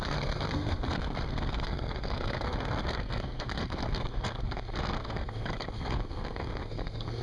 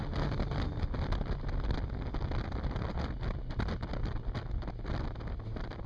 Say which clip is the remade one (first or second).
first